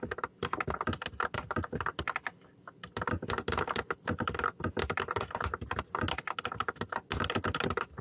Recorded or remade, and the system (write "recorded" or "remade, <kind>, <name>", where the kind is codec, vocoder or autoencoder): recorded